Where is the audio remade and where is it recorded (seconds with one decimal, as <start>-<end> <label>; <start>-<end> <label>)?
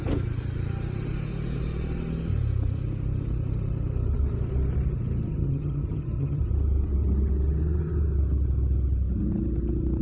0.0-5.3 recorded; 5.3-6.4 remade; 6.4-10.0 recorded